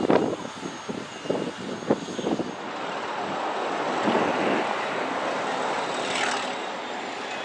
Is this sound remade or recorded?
recorded